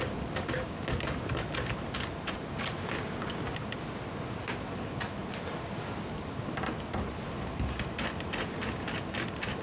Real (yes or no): yes